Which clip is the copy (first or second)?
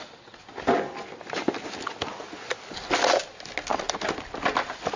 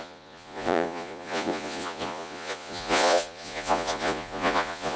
second